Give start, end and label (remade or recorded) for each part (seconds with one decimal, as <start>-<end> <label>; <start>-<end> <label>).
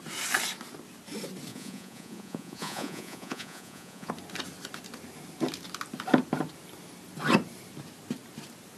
0.0-1.5 recorded; 1.5-4.1 remade; 4.1-8.8 recorded